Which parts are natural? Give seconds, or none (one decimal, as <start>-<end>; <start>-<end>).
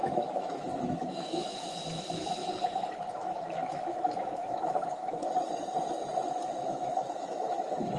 2.4-3.1; 5.1-6.3